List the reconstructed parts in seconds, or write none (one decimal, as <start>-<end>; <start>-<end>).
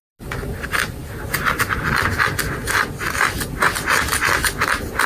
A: none